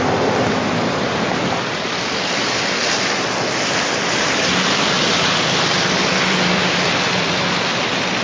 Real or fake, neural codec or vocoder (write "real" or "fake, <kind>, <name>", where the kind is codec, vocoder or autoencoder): fake, vocoder, BigVGAN v2